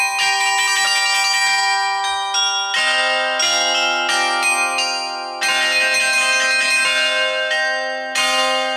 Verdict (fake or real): real